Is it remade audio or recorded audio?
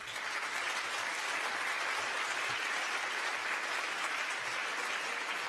remade